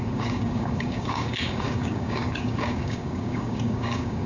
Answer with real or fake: fake